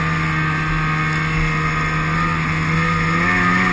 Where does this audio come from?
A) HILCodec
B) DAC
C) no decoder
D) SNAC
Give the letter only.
C